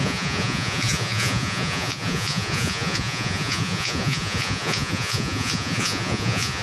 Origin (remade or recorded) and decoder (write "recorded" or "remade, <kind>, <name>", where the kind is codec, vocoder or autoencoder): remade, vocoder, Vocos